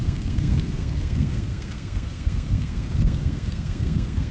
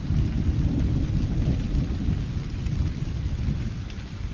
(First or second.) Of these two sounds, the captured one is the second